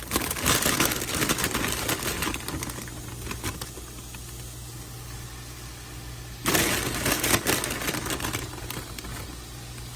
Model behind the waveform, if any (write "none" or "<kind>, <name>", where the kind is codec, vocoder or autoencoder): none